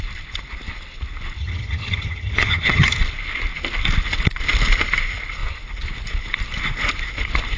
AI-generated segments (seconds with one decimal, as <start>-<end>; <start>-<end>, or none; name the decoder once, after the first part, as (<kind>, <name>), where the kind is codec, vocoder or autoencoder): 1.4-3.0 (vocoder, HiFi-GAN)